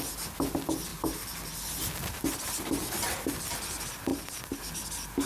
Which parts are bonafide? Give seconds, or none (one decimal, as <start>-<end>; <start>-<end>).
0.0-5.3